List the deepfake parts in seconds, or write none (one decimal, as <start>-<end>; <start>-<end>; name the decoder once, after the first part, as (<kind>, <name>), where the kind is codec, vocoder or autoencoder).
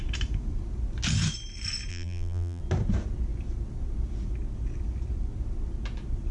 1.9-2.6 (vocoder, BigVGAN v2)